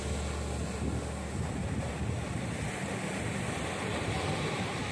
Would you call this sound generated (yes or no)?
no